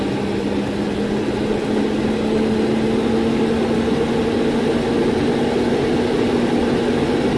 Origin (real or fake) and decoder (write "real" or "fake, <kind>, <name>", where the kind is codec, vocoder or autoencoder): real